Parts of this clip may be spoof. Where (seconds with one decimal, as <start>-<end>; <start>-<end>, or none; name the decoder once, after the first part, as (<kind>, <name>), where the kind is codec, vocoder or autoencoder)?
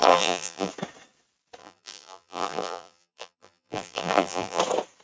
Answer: 0.0-0.7 (vocoder, BigVGAN v2); 1.6-4.6